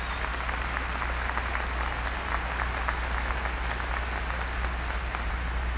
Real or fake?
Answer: real